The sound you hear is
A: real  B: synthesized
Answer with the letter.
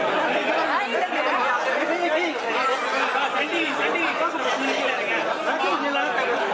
A